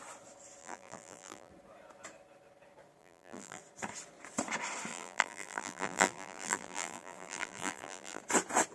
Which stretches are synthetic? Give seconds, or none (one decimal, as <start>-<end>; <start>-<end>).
0.6-1.5; 3.0-3.6; 4.9-8.2